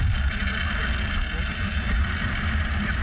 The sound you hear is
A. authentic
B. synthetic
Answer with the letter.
A